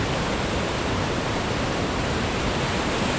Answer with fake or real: fake